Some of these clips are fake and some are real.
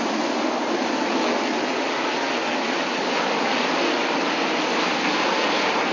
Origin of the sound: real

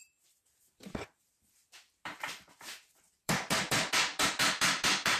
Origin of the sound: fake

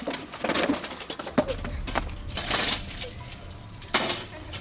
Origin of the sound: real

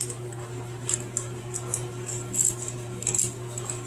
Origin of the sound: real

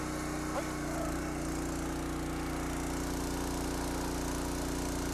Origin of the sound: real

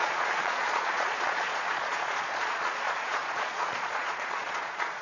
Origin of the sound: fake